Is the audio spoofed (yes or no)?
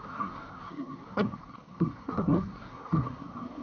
yes